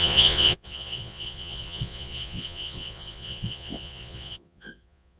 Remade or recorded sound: remade